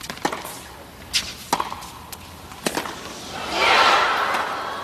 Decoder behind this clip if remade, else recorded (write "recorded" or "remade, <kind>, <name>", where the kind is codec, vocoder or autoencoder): recorded